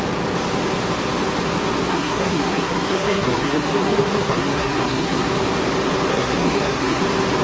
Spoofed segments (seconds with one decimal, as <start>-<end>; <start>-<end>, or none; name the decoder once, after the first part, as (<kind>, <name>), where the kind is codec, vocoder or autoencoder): 1.9-5.3 (codec, SNAC); 6.1-7.0